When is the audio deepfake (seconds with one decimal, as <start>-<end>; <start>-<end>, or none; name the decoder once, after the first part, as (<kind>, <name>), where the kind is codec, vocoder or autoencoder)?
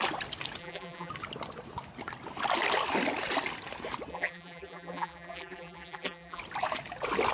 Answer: 0.6-1.1 (vocoder, BigVGAN v2); 4.1-6.4